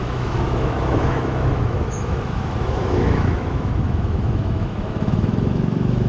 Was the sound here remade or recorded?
remade